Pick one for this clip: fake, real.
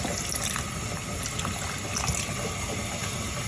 real